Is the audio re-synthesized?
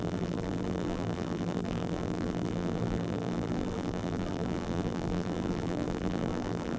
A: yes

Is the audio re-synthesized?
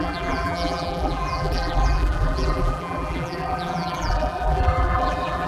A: yes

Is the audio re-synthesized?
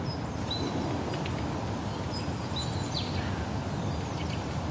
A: no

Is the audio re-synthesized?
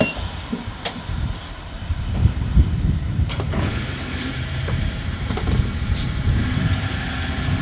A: yes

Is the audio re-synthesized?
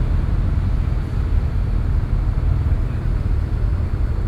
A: yes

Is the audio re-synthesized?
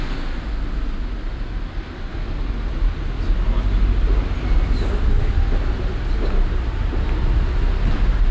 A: no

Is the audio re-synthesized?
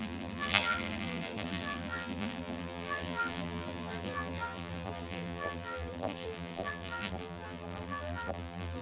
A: yes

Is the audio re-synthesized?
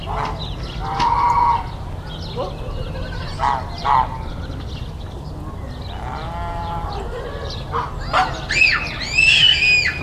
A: no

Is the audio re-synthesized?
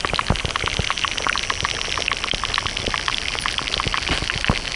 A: no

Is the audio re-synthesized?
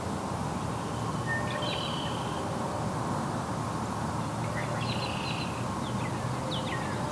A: no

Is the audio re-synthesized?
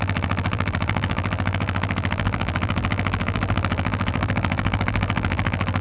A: yes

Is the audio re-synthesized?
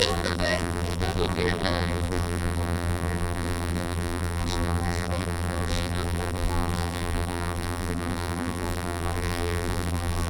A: yes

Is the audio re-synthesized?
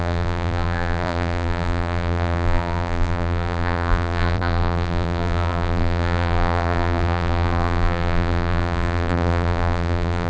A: yes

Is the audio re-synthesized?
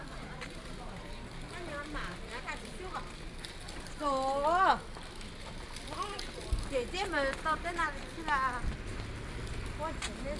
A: no